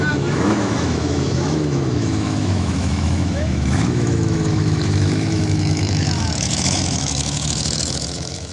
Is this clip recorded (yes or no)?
no